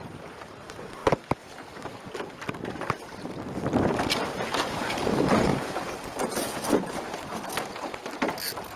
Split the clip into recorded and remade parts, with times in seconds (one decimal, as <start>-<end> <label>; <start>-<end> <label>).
0.0-1.0 remade; 1.0-3.8 recorded; 3.8-7.3 remade; 7.3-8.8 recorded